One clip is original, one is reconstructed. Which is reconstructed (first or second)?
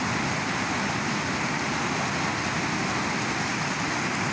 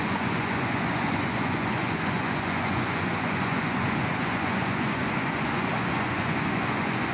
second